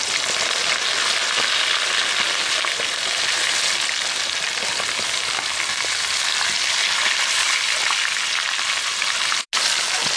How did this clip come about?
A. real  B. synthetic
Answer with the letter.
A